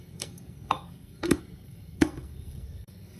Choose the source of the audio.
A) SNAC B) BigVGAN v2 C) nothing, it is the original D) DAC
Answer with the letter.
A